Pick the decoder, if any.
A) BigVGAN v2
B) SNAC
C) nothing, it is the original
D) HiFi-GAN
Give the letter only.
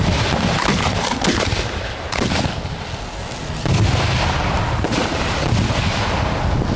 C